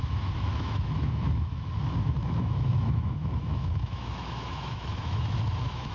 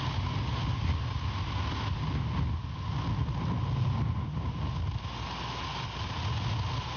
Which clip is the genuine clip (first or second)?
second